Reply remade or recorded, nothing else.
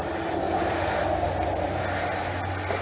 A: recorded